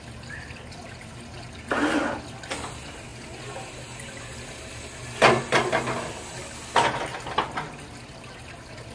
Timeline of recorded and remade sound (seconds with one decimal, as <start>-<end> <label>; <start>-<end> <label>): 0.0-8.9 recorded